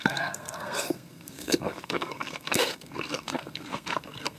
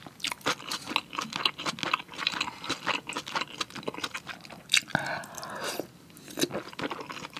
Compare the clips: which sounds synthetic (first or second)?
first